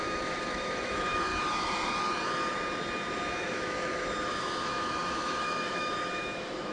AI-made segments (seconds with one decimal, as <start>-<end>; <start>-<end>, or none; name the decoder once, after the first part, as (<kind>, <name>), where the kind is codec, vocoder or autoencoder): 0.0-1.3 (autoencoder, DAC-VAE); 3.4-6.7